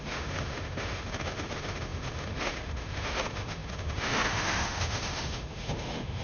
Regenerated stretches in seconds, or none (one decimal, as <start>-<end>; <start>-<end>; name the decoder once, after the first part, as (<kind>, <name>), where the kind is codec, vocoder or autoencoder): 0.0-6.2 (autoencoder, DAC-VAE)